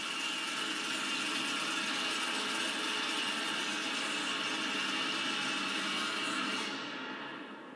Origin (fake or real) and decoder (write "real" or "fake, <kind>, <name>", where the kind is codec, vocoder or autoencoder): real